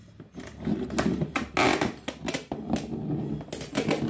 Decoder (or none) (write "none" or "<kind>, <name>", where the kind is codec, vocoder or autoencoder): none